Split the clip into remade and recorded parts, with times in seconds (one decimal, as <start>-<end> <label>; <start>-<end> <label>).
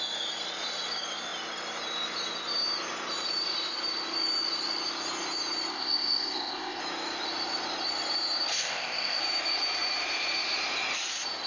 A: 0.0-5.7 recorded; 5.7-6.8 remade; 6.8-8.5 recorded; 8.5-9.2 remade; 9.2-11.5 recorded